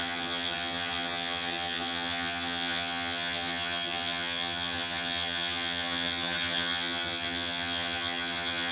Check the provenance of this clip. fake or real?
fake